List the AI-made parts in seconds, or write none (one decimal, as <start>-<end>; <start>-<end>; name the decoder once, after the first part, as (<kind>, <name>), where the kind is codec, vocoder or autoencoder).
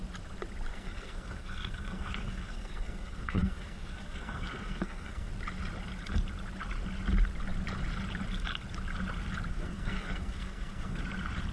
0.7-5.3 (codec, SNAC); 9.5-11.0